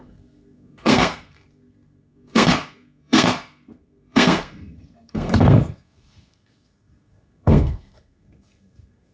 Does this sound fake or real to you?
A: fake